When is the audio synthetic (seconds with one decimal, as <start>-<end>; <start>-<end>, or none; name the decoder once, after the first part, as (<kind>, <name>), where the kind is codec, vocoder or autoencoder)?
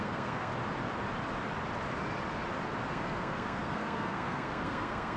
0.0-0.5 (codec, SNAC); 2.9-5.2